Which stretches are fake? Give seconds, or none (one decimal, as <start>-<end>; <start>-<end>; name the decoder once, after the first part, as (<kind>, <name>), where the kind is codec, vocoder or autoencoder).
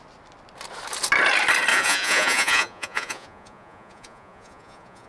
1.7-5.1 (vocoder, Vocos)